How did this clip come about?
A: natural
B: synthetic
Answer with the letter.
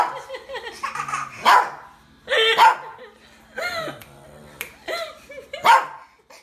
A